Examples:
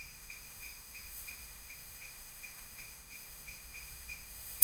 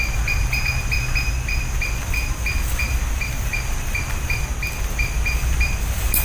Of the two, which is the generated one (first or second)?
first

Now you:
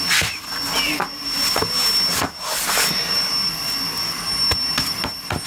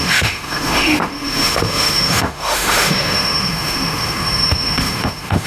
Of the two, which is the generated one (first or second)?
second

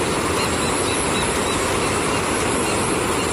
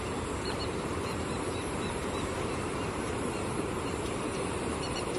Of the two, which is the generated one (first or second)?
second